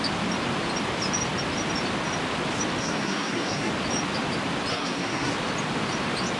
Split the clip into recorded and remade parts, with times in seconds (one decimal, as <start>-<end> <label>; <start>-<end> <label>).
0.0-2.8 recorded; 2.8-3.7 remade; 3.7-4.7 recorded; 4.7-5.3 remade; 5.3-6.4 recorded